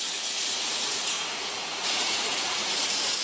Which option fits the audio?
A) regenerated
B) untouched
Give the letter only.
A